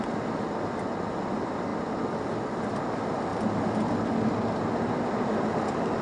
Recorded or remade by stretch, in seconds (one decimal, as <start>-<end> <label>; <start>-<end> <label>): 0.0-1.7 recorded; 1.7-2.6 remade; 2.6-6.0 recorded